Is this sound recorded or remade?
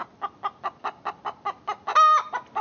recorded